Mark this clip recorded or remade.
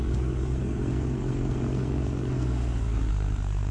remade